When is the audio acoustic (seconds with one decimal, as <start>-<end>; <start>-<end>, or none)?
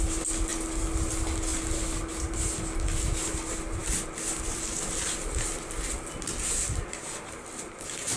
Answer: 0.0-8.2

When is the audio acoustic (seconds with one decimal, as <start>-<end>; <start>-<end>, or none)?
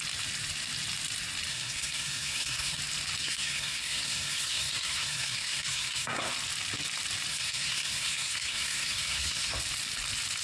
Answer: 0.0-1.5; 2.8-3.2; 6.3-7.3; 9.6-10.4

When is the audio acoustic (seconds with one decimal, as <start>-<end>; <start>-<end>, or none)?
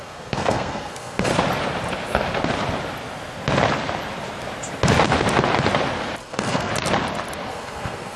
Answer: 1.3-6.2; 6.7-7.5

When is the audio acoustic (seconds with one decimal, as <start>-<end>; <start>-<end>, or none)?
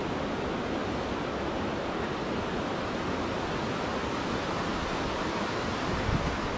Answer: 0.0-6.6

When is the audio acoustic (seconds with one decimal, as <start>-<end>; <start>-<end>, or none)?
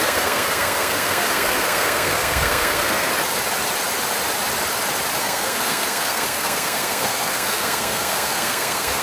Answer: 3.1-5.2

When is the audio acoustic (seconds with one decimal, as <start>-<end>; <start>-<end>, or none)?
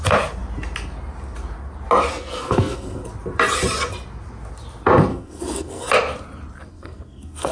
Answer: 0.0-2.1; 3.1-5.1; 5.9-6.7